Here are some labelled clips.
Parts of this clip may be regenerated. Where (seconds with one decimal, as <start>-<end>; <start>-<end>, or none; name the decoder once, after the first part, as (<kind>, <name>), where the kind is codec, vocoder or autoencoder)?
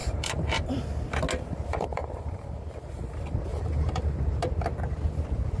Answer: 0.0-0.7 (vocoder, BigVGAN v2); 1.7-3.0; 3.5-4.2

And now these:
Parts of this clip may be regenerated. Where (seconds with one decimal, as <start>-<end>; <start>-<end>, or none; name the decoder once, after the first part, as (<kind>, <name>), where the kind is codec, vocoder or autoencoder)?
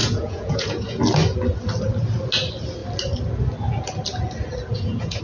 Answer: 0.0-1.0 (vocoder, Vocos); 4.7-5.2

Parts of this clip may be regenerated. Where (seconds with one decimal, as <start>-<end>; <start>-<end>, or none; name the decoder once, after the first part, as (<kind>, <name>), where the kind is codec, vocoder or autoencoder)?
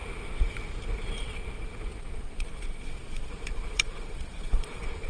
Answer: 1.9-5.1 (vocoder, Vocos)